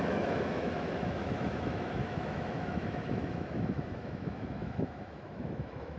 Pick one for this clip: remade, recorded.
remade